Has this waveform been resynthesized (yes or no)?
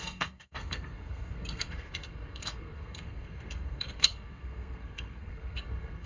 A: yes